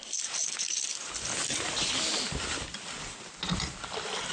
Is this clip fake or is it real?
real